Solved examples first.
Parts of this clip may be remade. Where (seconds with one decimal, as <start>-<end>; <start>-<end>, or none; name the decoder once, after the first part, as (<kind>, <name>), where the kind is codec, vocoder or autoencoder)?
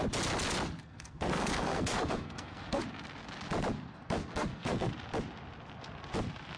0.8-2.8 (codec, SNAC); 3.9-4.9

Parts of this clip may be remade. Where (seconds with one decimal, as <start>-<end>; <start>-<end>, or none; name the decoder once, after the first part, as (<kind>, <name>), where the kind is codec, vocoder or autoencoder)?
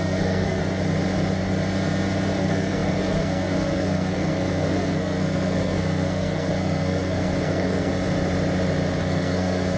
0.0-0.6 (codec, SNAC); 2.4-7.9; 9.0-9.8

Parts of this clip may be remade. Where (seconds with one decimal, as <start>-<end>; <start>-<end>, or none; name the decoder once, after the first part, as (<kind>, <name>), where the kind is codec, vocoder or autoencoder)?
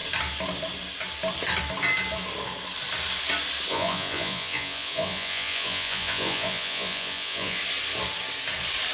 3.7-7.6 (vocoder, Vocos)